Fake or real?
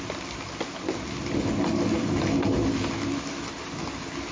real